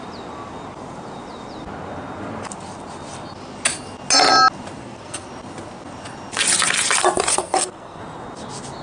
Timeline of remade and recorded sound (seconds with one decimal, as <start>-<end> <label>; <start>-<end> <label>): 0.0-4.8 recorded; 4.8-5.3 remade; 5.3-7.3 recorded; 7.3-8.0 remade; 8.0-8.8 recorded